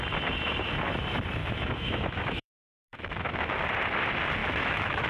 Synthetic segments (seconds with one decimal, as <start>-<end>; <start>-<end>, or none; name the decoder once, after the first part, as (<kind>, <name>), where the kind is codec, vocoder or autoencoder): 1.4-3.6 (autoencoder, DAC-VAE); 4.4-5.1